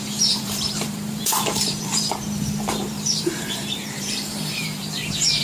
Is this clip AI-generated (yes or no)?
yes